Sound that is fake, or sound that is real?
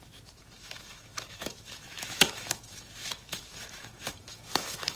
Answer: fake